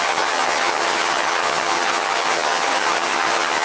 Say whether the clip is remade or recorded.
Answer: remade